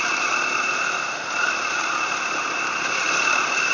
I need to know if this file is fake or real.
fake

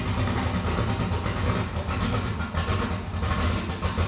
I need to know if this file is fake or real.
real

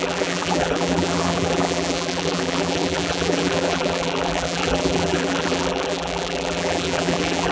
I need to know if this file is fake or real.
fake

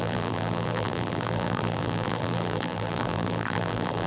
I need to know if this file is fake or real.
fake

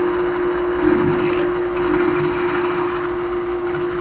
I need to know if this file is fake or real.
real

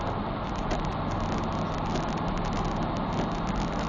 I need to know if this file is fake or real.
real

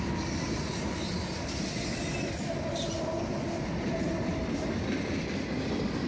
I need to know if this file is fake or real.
real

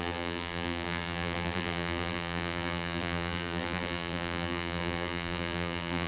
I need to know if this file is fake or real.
fake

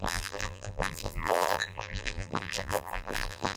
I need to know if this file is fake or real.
fake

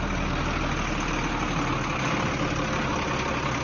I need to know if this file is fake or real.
real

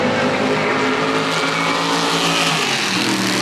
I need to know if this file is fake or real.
real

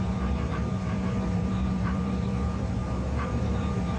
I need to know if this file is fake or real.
fake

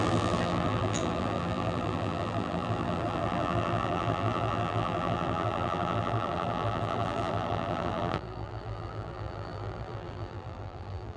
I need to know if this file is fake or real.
fake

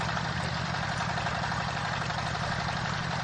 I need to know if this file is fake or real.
real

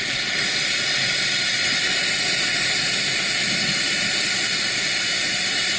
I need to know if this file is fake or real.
real